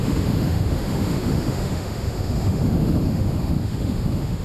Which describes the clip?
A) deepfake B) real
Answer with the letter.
A